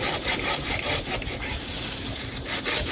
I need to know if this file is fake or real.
real